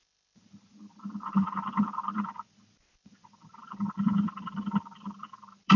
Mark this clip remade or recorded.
remade